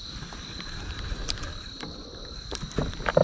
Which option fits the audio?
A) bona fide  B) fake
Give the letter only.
A